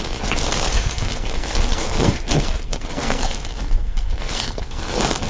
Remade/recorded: remade